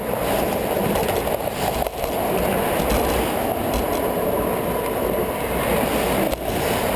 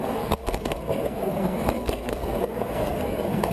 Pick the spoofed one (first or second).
second